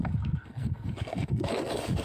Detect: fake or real fake